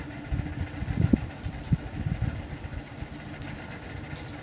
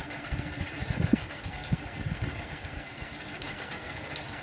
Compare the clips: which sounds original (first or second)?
first